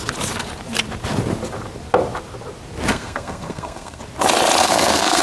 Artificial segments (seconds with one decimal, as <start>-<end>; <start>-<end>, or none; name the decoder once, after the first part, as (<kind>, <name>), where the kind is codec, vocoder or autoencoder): 2.9-4.0 (codec, SNAC); 4.6-5.2